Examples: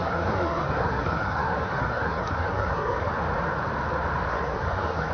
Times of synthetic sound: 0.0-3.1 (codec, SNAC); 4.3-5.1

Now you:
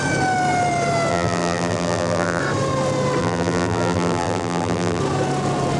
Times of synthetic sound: 1.1-2.4 (vocoder, BigVGAN v2); 3.2-5.0

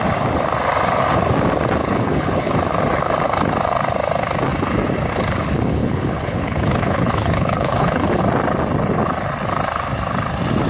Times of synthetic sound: 1.8-2.5 (codec, HILCodec); 5.8-8.2

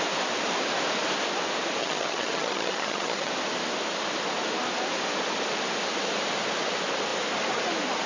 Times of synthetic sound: 1.8-3.3 (vocoder, HiFi-GAN)